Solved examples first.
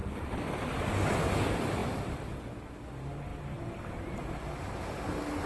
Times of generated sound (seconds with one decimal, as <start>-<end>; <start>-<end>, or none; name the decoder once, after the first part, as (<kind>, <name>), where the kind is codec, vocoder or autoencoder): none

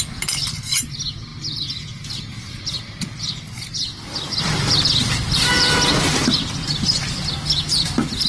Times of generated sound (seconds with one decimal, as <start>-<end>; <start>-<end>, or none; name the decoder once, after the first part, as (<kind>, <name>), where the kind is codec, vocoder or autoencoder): 3.9-5.9 (vocoder, BigVGAN v2); 7.0-8.3

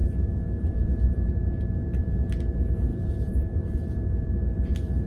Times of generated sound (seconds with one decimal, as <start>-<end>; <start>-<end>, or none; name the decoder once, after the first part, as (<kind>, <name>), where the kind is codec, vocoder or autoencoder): 0.0-1.3 (vocoder, BigVGAN v2); 2.9-5.1